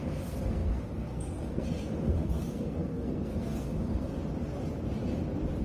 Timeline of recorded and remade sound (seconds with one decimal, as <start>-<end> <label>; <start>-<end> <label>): 0.0-4.2 remade; 4.2-5.6 recorded